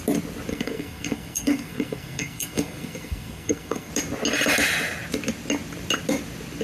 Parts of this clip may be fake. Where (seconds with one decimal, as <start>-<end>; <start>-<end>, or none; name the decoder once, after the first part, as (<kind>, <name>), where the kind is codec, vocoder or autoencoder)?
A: 0.5-3.9 (codec, SNAC)